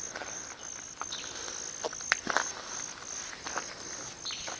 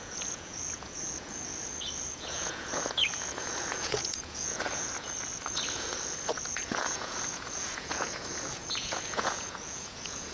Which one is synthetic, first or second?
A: second